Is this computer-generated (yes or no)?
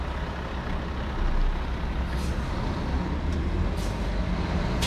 no